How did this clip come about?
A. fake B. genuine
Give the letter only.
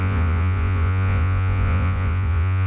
A